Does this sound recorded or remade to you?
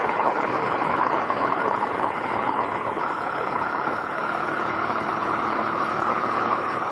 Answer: remade